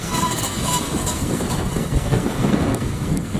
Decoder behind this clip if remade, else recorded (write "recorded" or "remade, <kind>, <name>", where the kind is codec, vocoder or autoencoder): remade, codec, SNAC